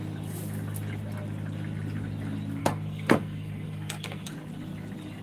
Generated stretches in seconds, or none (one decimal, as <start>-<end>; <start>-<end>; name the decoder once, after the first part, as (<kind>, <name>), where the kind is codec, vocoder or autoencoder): 2.6-4.3 (codec, SNAC)